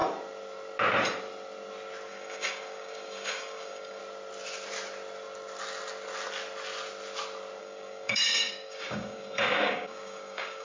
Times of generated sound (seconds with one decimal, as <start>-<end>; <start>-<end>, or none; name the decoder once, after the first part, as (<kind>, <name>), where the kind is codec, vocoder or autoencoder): 2.1-4.0 (codec, DAC); 7.6-10.6